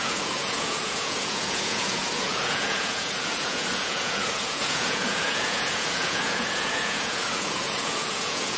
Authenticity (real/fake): fake